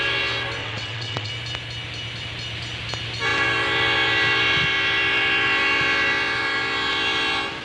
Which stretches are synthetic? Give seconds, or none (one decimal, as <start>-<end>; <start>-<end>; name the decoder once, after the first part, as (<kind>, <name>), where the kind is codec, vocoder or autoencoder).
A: 0.6-1.3 (vocoder, WaveNeXt)